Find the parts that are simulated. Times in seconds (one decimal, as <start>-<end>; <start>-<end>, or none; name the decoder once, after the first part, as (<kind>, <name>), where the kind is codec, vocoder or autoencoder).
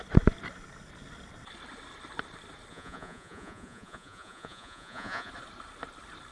2.7-5.3 (vocoder, Vocos)